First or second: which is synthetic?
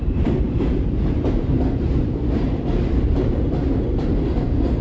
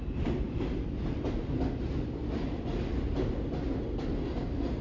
first